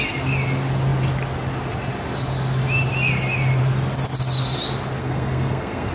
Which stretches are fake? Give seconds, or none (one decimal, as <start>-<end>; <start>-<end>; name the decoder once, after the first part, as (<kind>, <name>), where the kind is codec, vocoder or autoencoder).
5.0-5.9 (codec, SNAC)